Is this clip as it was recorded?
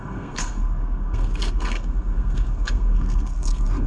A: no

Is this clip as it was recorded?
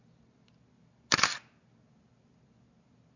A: yes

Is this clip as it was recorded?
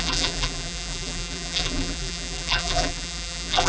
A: no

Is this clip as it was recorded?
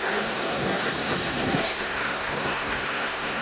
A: no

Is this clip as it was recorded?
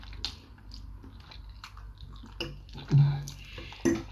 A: yes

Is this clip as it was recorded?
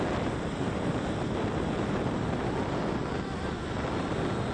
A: yes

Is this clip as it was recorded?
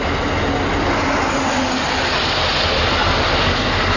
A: yes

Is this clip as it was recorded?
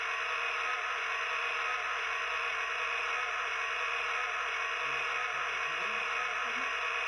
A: yes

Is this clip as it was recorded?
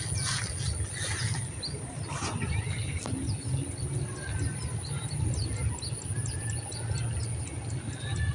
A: yes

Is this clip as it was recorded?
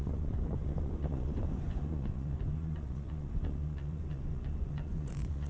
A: no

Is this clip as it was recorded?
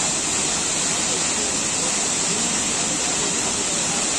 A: yes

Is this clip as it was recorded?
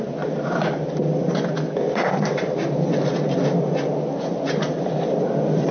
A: yes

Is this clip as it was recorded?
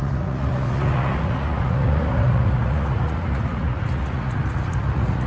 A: no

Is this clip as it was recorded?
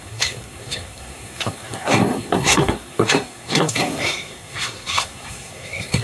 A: no